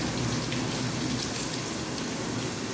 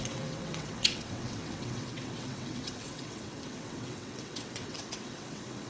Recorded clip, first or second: first